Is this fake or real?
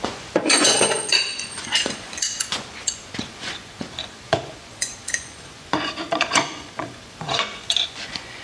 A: fake